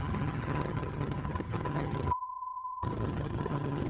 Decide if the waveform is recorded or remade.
remade